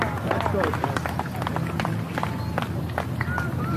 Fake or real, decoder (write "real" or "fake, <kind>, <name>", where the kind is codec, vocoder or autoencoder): real